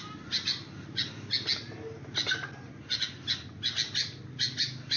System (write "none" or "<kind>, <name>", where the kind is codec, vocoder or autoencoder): none